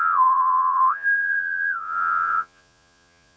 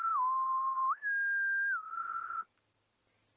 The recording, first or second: second